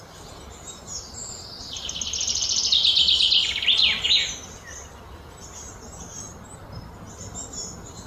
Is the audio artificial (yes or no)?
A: no